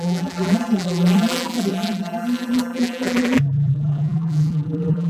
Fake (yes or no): yes